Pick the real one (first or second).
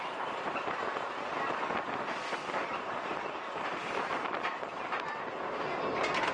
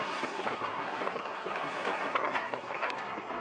first